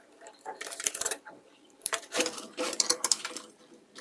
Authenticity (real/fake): fake